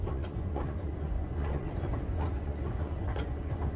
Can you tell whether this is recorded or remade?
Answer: remade